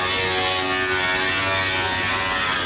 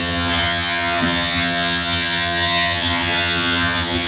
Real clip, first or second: first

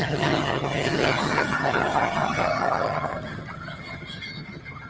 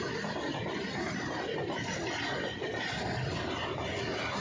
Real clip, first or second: second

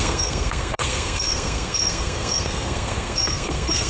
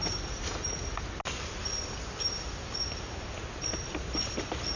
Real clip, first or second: second